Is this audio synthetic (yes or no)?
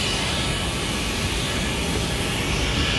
no